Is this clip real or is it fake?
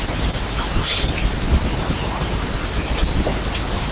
real